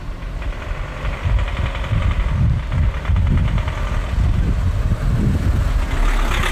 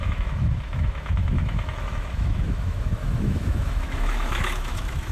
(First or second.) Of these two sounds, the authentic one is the first